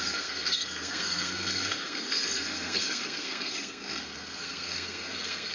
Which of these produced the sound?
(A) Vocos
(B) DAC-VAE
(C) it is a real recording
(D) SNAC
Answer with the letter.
D